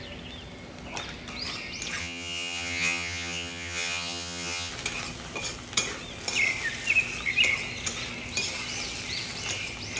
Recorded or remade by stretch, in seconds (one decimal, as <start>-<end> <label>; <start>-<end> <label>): 0.0-2.0 recorded; 2.0-4.7 remade; 4.7-10.0 recorded

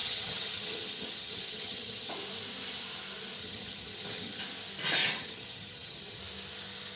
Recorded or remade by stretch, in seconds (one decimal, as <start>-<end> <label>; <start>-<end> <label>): 0.0-2.1 remade; 2.1-3.4 recorded; 3.4-4.4 remade; 4.4-5.0 recorded; 5.0-6.2 remade; 6.2-7.0 recorded

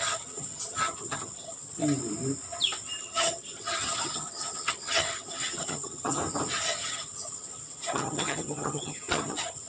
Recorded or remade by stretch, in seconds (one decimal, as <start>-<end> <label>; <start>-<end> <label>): 0.0-1.8 remade; 1.8-3.0 recorded; 3.0-6.2 remade; 6.2-6.8 recorded; 6.8-9.7 remade

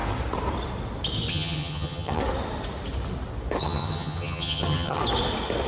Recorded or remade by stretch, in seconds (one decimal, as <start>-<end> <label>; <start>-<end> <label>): 0.0-1.3 recorded; 1.3-2.2 remade; 2.2-3.6 recorded; 3.6-5.0 remade; 5.0-5.7 recorded

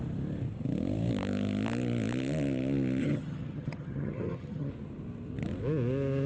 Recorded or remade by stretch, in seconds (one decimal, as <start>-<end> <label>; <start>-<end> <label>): 0.0-3.0 recorded; 3.0-4.7 remade; 4.7-6.3 recorded